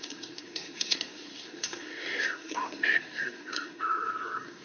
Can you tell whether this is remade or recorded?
remade